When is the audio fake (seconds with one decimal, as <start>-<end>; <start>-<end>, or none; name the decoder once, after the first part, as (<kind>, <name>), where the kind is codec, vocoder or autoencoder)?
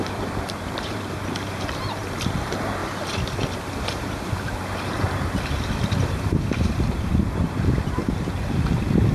0.0-2.8 (vocoder, BigVGAN v2); 3.8-9.1